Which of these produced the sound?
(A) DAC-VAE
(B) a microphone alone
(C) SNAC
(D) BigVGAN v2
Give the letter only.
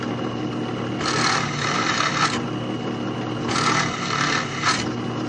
B